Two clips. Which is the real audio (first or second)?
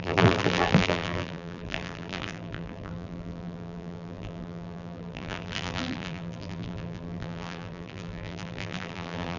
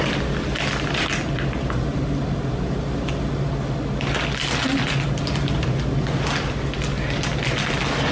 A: second